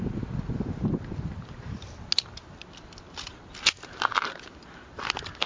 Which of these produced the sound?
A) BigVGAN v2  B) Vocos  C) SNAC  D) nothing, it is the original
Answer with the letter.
D